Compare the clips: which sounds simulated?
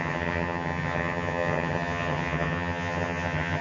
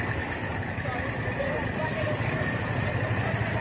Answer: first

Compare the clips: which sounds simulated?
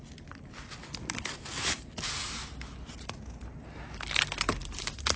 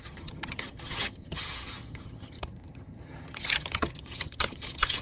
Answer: second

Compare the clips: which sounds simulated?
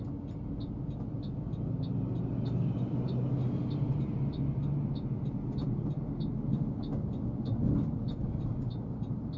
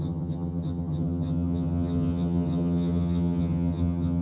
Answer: second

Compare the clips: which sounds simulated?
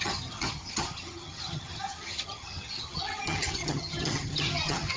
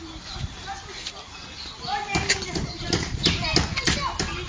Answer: first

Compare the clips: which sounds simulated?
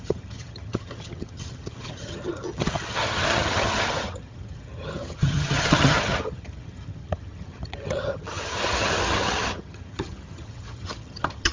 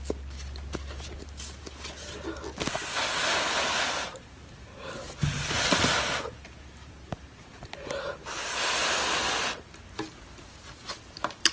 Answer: first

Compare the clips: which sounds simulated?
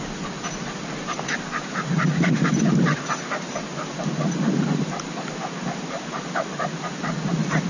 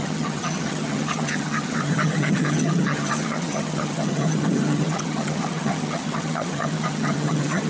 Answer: second